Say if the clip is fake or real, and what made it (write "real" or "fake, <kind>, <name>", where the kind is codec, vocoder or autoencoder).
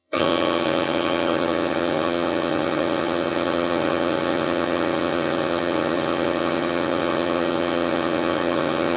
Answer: fake, vocoder, HiFi-GAN